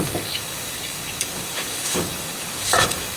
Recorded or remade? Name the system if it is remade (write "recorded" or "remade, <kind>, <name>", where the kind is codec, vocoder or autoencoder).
remade, codec, DAC